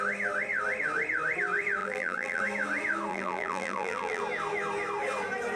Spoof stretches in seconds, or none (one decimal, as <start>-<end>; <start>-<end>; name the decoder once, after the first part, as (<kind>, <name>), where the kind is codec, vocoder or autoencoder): 1.8-2.4 (vocoder, BigVGAN v2); 3.1-4.2

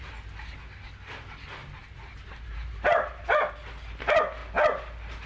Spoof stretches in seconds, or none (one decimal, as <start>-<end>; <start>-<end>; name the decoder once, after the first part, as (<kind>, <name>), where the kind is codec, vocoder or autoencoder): 1.6-3.5 (vocoder, BigVGAN v2)

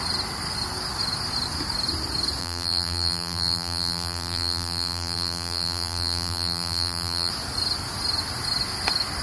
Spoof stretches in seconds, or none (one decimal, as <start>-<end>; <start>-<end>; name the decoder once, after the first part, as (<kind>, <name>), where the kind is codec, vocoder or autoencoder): 2.4-7.3 (vocoder, BigVGAN v2)

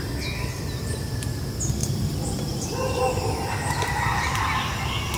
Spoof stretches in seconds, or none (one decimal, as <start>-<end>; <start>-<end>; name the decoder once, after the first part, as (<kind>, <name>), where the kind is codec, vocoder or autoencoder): 1.8-3.5 (vocoder, BigVGAN v2)

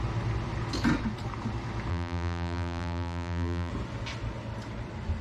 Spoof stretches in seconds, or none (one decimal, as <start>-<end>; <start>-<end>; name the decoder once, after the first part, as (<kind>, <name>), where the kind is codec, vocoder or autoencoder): 1.9-3.7 (vocoder, BigVGAN v2)

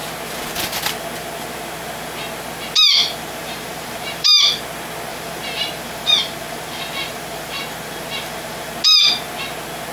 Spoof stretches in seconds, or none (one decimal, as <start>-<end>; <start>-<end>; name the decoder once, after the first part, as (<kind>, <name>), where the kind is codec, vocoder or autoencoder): 3.0-4.6 (vocoder, BigVGAN v2); 5.1-8.7